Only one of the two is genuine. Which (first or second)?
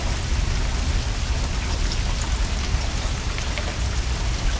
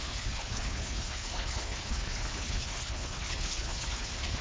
first